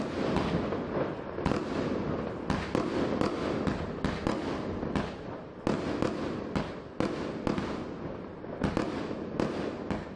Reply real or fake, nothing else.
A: real